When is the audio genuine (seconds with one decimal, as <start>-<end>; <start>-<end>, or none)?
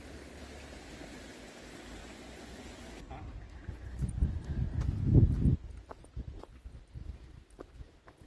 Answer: 0.0-2.0; 2.9-3.6; 4.8-8.3